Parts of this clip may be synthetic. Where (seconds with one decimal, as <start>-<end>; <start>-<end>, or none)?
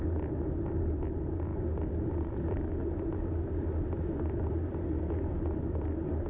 none